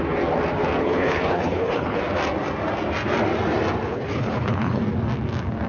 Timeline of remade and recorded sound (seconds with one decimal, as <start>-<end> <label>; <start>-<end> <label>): 0.0-0.8 recorded; 0.8-2.0 remade; 2.0-3.9 recorded; 3.9-4.8 remade; 4.8-5.7 recorded